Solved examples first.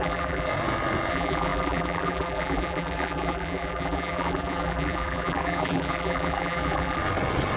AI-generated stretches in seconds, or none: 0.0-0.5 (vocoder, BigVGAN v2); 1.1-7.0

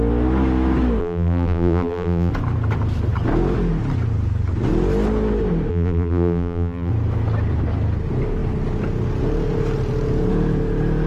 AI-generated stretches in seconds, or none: 1.0-2.3 (vocoder, BigVGAN v2); 5.7-6.9

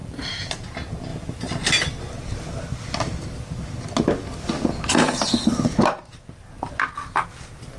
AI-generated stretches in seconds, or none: 0.0-0.7 (vocoder, BigVGAN v2)

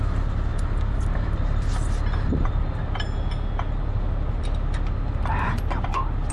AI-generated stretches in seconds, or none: 0.5-1.7 (vocoder, BigVGAN v2)